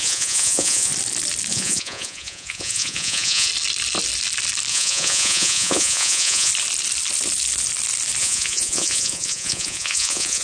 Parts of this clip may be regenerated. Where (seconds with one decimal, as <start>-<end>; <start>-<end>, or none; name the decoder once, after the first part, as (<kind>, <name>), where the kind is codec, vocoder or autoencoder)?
0.0-0.9 (vocoder, Vocos); 1.5-3.5; 4.7-6.5; 8.2-10.4